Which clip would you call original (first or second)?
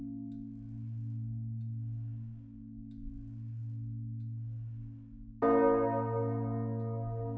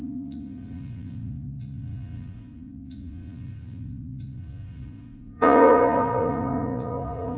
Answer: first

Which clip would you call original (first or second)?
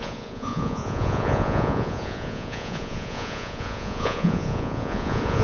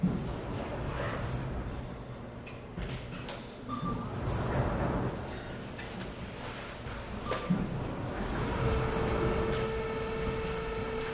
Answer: second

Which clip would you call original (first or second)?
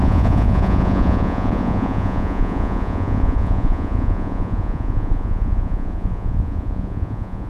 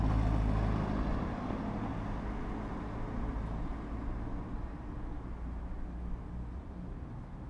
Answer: second